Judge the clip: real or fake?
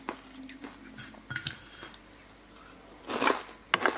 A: real